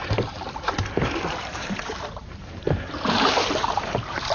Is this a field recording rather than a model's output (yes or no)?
no